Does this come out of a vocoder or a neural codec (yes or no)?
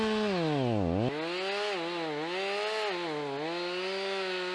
no